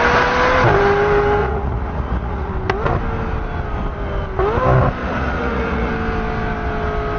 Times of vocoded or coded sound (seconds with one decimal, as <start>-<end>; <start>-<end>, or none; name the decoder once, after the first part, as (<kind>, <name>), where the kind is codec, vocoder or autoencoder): 1.4-2.5 (vocoder, Vocos); 5.0-5.9